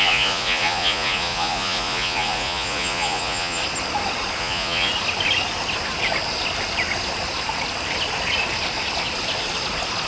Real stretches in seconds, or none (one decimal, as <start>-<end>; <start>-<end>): 3.6-4.4; 4.9-10.1